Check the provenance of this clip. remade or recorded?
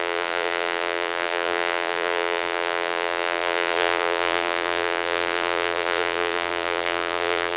remade